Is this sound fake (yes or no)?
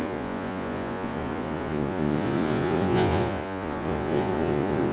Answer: yes